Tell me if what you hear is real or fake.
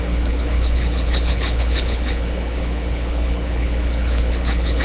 fake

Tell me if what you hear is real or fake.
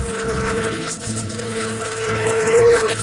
fake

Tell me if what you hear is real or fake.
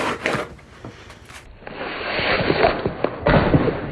real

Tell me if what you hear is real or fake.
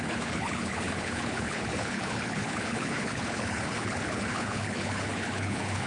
fake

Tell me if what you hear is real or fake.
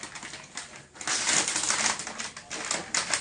real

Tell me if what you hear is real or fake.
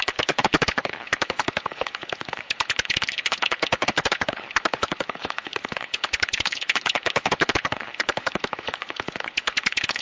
fake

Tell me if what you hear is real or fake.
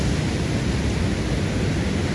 real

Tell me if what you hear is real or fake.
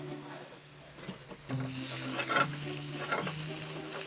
real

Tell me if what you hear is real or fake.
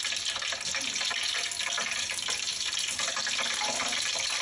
real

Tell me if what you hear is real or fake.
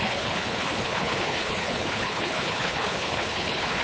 fake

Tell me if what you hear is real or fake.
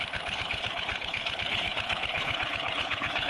fake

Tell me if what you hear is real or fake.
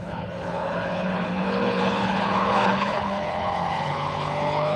fake